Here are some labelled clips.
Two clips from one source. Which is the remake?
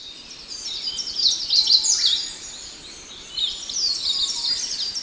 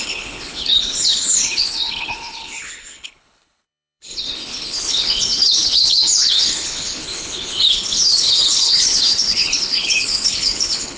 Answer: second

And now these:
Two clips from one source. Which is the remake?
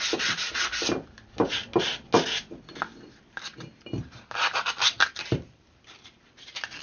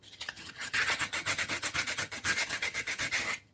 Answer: second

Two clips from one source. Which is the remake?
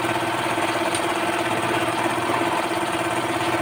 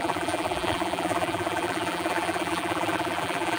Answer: second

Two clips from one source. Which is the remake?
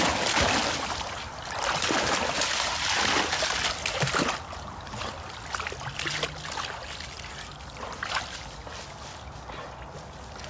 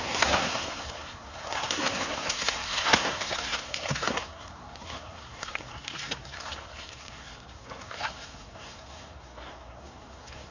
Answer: second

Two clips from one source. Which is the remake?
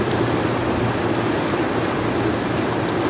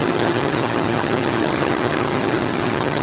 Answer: second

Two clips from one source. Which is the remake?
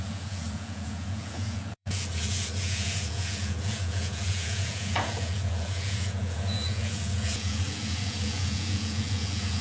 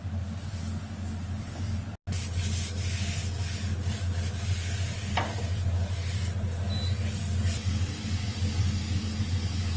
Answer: first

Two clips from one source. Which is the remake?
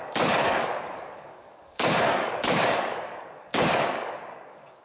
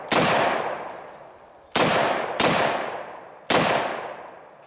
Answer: first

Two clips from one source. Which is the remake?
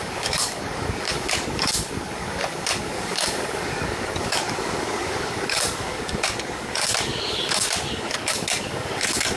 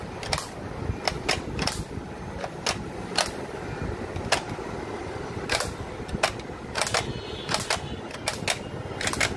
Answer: first